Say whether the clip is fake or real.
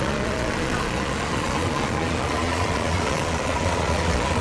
fake